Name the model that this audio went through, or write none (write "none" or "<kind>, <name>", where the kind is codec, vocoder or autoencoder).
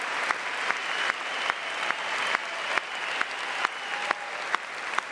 none